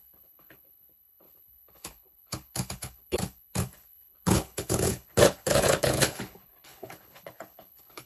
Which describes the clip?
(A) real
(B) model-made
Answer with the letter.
B